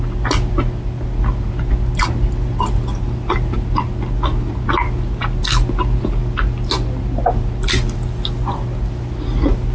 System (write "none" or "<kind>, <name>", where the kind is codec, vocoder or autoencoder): none